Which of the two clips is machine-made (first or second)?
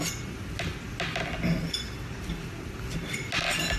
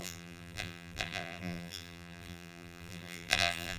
second